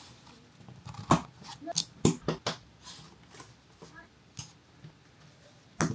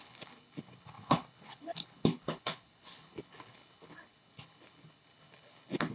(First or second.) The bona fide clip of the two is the first